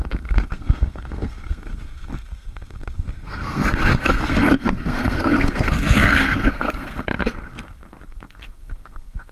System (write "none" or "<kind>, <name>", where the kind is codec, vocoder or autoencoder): codec, SNAC